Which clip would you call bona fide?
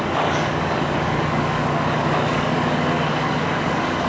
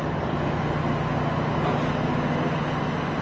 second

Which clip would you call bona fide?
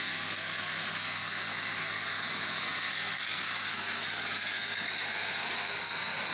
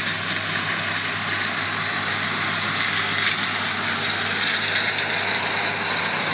second